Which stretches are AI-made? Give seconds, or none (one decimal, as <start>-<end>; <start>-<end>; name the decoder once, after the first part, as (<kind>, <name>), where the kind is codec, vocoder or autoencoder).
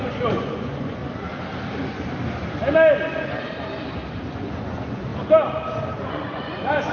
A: 0.0-1.0 (vocoder, Vocos); 4.2-5.1; 6.1-6.9